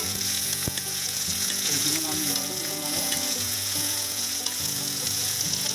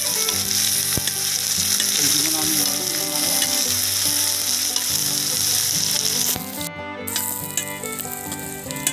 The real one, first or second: second